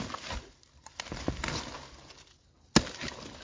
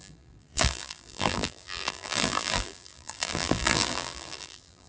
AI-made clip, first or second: second